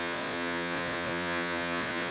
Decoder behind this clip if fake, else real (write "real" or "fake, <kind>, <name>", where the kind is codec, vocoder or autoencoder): fake, vocoder, Vocos